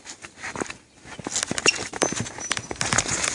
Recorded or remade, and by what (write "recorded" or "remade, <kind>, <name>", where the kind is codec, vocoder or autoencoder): recorded